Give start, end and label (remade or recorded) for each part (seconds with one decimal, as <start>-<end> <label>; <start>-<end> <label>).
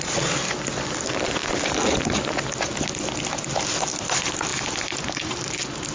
0.0-4.5 recorded; 4.5-5.9 remade